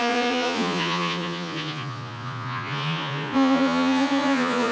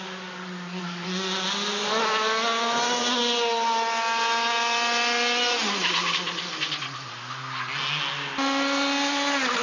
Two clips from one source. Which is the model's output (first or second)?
first